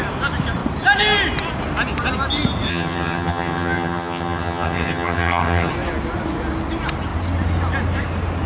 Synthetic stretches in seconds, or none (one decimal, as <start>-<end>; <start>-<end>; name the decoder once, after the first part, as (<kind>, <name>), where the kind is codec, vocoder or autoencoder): 2.7-5.7 (vocoder, HiFi-GAN)